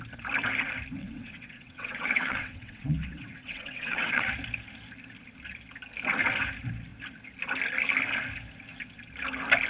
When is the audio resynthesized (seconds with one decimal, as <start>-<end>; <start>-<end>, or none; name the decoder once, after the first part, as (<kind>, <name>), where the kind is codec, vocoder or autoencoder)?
1.0-4.3 (vocoder, WaveNeXt)